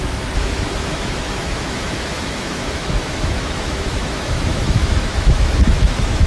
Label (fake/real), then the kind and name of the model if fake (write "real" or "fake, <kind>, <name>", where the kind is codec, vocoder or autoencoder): fake, autoencoder, DAC-VAE